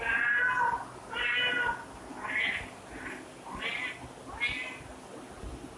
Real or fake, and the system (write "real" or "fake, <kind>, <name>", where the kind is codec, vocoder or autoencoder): real